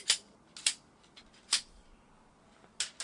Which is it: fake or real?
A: real